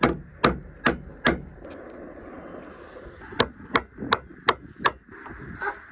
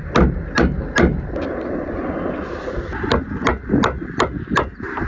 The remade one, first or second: second